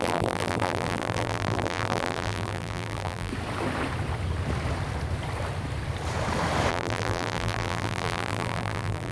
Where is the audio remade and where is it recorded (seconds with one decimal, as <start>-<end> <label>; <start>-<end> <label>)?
0.0-3.3 remade; 3.3-6.7 recorded; 6.7-9.1 remade